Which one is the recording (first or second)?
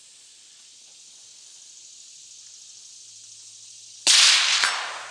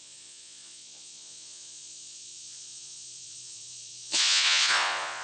first